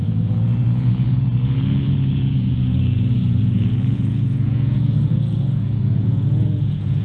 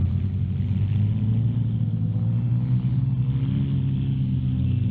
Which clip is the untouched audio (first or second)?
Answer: second